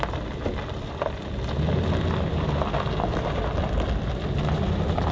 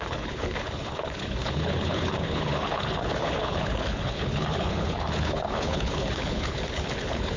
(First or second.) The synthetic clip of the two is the second